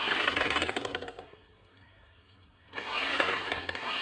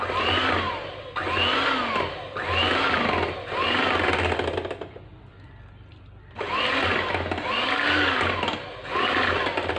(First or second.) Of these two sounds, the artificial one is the first